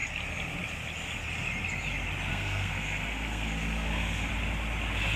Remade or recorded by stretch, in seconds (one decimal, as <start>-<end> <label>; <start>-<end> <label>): 0.0-2.3 recorded; 2.3-4.3 remade; 4.3-5.2 recorded